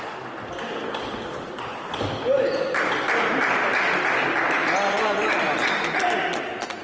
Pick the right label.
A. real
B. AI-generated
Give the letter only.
A